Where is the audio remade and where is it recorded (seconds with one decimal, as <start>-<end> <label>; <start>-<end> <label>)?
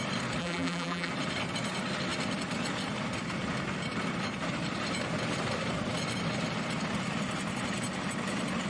0.0-0.4 recorded; 0.4-1.1 remade; 1.1-8.7 recorded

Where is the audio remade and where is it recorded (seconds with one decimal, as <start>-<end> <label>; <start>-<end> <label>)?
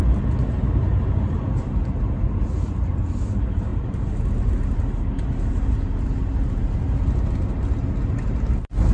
0.0-3.7 recorded; 3.7-4.3 remade; 4.3-8.9 recorded